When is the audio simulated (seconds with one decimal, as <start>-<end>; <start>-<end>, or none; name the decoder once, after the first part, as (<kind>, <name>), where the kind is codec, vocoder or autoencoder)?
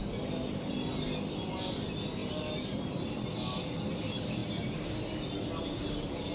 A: none